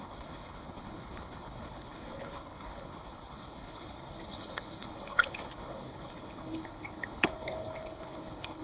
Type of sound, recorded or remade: remade